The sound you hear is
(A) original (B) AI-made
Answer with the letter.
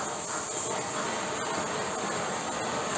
A